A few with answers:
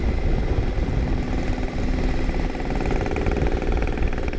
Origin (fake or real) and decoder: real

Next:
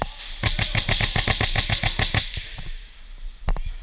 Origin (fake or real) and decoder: real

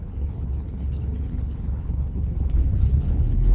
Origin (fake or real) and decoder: fake, codec, HILCodec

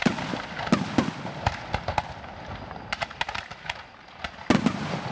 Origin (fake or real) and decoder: real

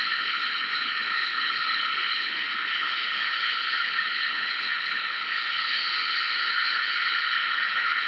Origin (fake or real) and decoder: fake, codec, HILCodec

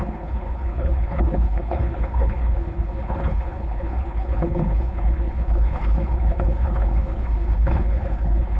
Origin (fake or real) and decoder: fake, codec, HILCodec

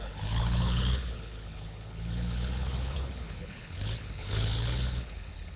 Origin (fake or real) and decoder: fake, codec, HILCodec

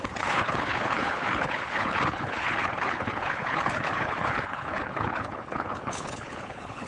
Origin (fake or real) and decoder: fake, codec, HILCodec